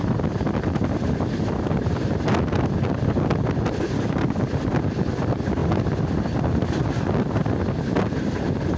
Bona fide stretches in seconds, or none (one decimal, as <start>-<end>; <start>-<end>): 0.0-8.8